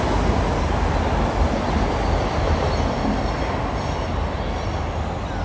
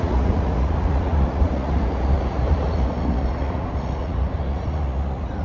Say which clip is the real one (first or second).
first